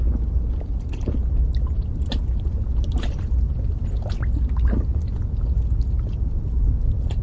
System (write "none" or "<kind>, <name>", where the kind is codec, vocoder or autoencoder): none